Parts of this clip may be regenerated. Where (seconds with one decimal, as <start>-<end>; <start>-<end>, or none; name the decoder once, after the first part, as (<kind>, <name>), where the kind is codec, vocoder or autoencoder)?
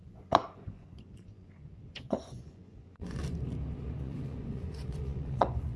0.0-3.2 (vocoder, Vocos); 4.0-5.8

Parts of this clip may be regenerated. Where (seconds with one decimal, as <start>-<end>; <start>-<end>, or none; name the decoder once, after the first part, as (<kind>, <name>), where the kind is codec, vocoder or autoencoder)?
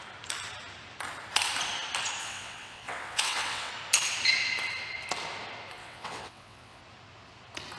2.2-3.7 (vocoder, WaveNeXt); 5.8-6.8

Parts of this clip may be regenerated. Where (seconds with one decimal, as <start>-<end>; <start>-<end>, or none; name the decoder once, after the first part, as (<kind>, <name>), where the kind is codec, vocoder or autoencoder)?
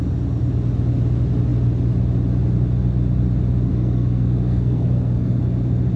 3.7-5.4 (codec, SNAC)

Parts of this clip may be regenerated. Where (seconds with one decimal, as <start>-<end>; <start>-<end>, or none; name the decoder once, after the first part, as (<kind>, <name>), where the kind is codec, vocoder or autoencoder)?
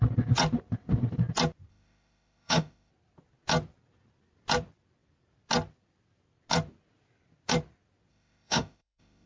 1.7-2.9 (autoencoder, DAC-VAE); 8.1-9.3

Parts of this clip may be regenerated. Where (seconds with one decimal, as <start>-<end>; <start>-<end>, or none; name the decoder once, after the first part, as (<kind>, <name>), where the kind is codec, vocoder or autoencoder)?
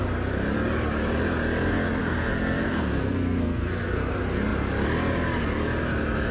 2.0-4.1 (codec, SNAC)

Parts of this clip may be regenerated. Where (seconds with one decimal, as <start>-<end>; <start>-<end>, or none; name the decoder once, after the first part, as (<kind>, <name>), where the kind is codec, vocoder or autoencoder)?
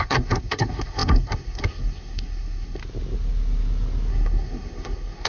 0.0-2.8 (codec, SNAC); 4.1-5.3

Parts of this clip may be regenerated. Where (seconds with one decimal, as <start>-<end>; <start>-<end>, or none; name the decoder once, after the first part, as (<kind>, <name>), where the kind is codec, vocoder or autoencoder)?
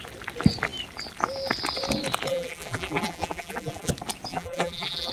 2.3-3.9 (vocoder, BigVGAN v2); 4.3-5.1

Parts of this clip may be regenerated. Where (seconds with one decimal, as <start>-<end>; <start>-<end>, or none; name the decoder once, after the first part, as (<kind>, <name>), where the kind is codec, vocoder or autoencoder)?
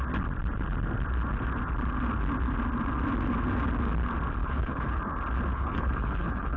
4.4-5.0 (codec, HILCodec); 5.5-6.6